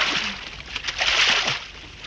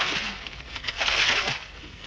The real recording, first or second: first